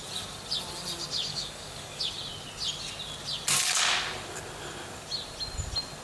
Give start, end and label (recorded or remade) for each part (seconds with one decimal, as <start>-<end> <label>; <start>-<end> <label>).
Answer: 0.0-1.3 recorded; 1.3-2.0 remade; 2.0-6.0 recorded